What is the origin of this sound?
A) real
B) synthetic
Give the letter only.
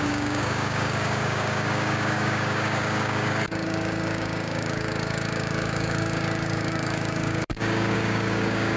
B